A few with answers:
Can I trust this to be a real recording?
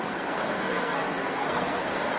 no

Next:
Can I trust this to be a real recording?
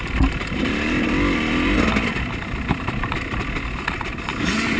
yes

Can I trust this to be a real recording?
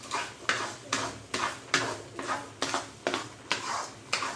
yes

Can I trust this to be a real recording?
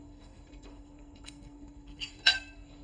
no